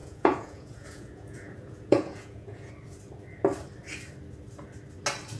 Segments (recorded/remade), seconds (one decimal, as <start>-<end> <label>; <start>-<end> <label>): 0.0-2.7 remade; 2.7-5.4 recorded